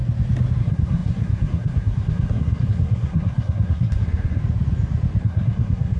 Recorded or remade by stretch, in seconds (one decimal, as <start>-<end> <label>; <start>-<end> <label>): 0.0-0.6 recorded; 0.6-4.4 remade; 4.4-5.2 recorded; 5.2-6.0 remade